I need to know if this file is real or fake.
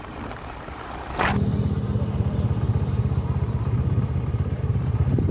real